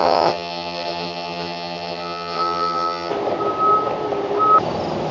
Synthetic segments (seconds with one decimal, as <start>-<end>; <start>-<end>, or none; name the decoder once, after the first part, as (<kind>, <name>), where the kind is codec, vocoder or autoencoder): 0.0-3.1 (vocoder, HiFi-GAN)